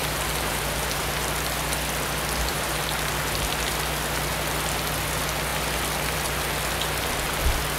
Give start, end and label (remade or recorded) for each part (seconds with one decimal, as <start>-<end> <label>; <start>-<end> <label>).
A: 0.0-1.1 remade; 1.1-2.5 recorded; 2.5-3.2 remade; 3.2-7.8 recorded